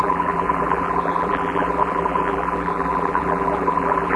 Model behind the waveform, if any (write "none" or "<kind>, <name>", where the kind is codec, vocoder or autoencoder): vocoder, BigVGAN v2